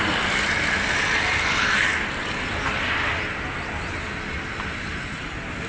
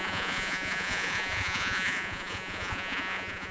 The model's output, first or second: second